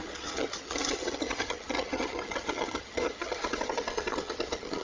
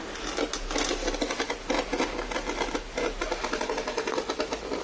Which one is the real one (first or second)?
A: second